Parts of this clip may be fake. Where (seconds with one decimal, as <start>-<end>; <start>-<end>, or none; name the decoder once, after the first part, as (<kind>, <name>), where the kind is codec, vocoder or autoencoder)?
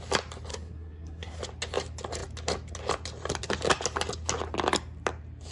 0.5-1.4 (codec, SNAC)